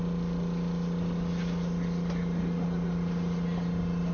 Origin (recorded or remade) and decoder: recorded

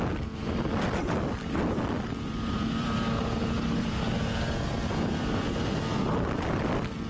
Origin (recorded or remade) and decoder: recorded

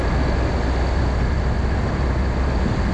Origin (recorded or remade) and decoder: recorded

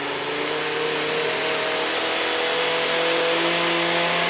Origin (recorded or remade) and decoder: recorded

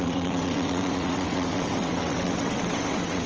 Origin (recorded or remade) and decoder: remade, vocoder, WaveNeXt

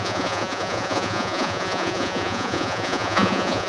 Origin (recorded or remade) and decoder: remade, vocoder, Vocos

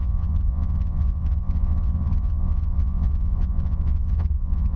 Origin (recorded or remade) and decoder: remade, vocoder, Vocos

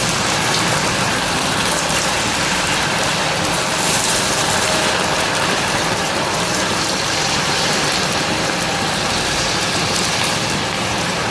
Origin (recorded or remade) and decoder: remade, vocoder, BigVGAN v2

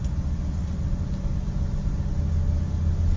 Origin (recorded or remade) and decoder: recorded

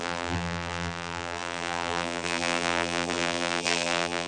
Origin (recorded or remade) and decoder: remade, vocoder, BigVGAN v2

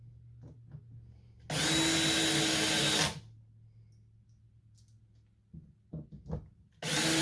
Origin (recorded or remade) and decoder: recorded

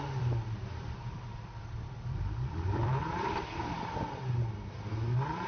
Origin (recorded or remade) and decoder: remade, vocoder, BigVGAN v2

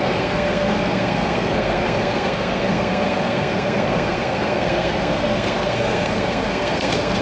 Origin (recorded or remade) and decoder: remade, codec, SNAC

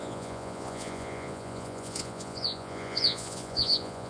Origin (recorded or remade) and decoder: remade, vocoder, Vocos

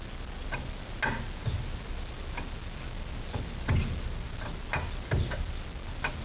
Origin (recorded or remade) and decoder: recorded